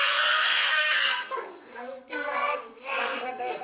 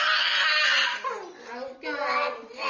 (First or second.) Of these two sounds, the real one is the second